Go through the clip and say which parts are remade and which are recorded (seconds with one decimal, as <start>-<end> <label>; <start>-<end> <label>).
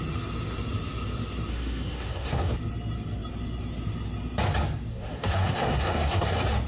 0.0-1.5 recorded; 1.5-2.5 remade; 2.5-4.9 recorded; 4.9-6.3 remade; 6.3-6.7 recorded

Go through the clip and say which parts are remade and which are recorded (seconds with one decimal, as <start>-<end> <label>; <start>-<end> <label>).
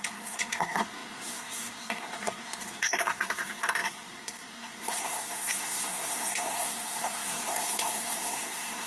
0.0-8.9 remade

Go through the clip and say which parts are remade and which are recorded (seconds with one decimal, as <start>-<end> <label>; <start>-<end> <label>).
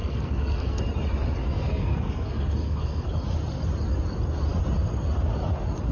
0.0-0.8 remade; 0.8-1.4 recorded; 1.4-3.1 remade; 3.1-5.9 recorded